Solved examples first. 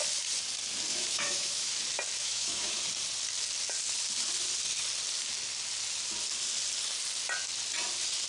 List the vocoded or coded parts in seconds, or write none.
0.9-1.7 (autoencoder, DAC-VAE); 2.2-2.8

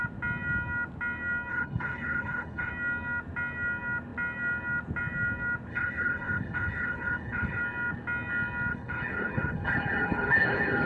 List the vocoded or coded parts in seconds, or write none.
1.5-2.7 (codec, HILCodec); 5.7-7.6; 8.7-10.9

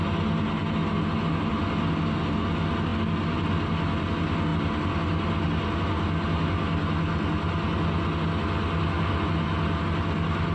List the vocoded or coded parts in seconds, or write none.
none

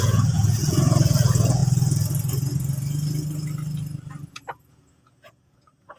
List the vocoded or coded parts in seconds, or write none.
0.0-1.6 (vocoder, Vocos); 4.3-6.0